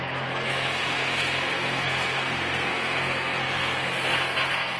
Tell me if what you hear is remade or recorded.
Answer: remade